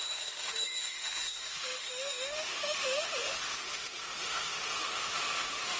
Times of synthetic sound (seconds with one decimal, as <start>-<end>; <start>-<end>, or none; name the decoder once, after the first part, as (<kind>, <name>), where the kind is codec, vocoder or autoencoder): 0.0-5.8 (autoencoder, DAC-VAE)